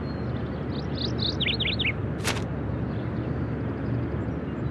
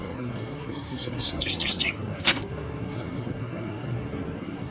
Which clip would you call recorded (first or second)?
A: first